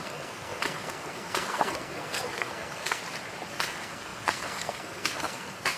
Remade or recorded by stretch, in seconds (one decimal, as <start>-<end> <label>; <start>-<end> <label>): 0.0-3.0 remade; 3.0-3.5 recorded; 3.5-5.8 remade